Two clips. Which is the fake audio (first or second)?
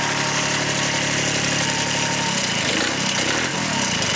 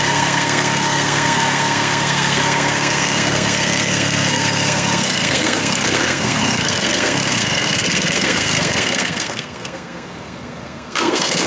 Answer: second